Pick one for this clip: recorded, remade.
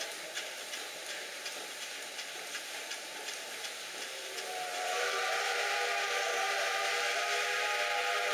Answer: remade